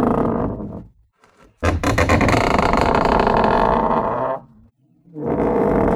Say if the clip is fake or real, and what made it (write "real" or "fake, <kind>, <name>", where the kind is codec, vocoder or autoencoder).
fake, vocoder, BigVGAN v2